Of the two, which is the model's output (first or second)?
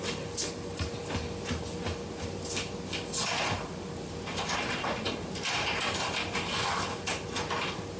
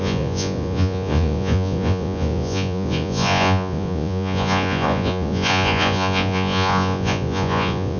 second